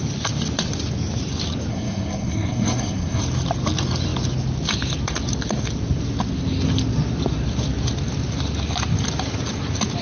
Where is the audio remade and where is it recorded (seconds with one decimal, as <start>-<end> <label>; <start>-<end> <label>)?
0.0-1.7 recorded; 1.7-3.2 remade; 3.2-10.0 recorded